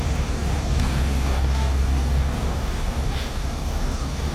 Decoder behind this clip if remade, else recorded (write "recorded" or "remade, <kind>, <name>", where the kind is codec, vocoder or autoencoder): remade, codec, DAC